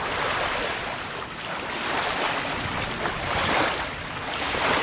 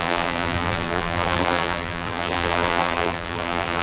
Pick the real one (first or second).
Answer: first